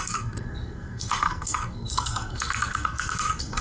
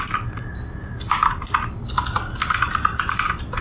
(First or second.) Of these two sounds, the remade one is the first